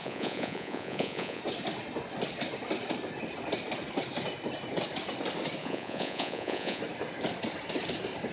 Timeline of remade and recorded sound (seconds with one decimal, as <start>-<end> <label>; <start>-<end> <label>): 0.0-1.4 remade; 1.4-5.6 recorded; 5.6-6.8 remade; 6.8-8.3 recorded